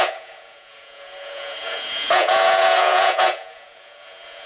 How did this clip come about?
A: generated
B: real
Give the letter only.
A